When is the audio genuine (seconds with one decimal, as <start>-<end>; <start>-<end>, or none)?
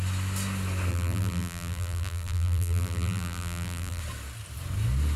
0.0-0.9; 4.0-5.2